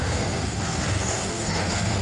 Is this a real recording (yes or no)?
no